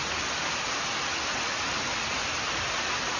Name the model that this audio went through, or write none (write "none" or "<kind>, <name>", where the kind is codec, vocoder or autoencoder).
none